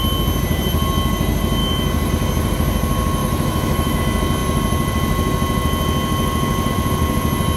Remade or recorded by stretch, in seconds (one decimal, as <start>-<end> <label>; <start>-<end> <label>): 0.0-1.6 recorded; 1.6-2.1 remade; 2.1-3.2 recorded; 3.2-4.0 remade; 4.0-7.6 recorded

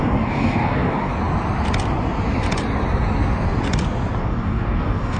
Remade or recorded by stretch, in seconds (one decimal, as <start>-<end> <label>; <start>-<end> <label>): 0.0-1.1 remade; 1.1-4.2 recorded; 4.2-5.2 remade

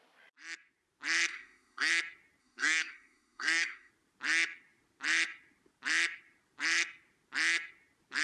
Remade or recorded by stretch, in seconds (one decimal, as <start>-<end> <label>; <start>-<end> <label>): 0.0-1.3 recorded; 1.3-1.9 remade; 1.9-2.4 recorded; 2.4-3.9 remade; 3.9-8.2 recorded